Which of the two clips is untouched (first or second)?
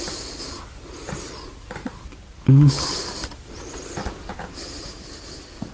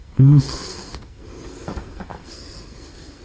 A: first